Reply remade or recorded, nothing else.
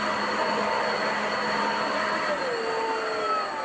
recorded